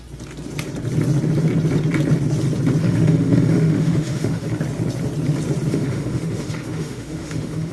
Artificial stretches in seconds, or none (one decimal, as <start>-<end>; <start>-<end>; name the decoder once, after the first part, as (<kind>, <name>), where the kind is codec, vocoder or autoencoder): 2.8-4.5 (autoencoder, DAC-VAE); 5.7-7.7